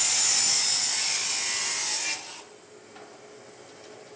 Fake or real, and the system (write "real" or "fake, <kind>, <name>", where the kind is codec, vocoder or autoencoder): real